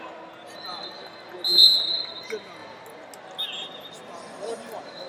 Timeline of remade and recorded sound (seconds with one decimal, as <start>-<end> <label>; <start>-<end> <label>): 0.0-5.1 recorded